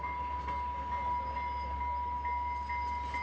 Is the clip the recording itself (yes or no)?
yes